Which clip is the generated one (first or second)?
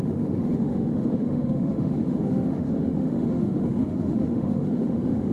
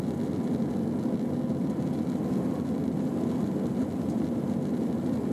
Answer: first